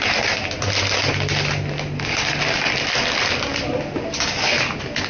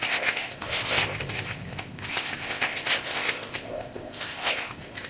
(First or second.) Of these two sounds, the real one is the first